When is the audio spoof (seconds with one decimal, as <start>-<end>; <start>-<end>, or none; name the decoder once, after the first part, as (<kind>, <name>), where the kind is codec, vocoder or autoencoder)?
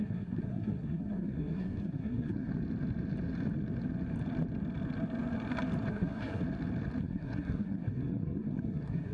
0.0-2.5 (codec, SNAC); 5.9-6.4; 7.0-9.1